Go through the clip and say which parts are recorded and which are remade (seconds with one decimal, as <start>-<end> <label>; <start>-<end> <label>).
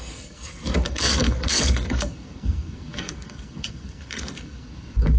0.0-5.2 remade